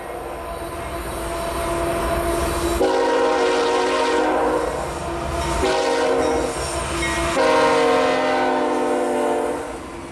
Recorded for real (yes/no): yes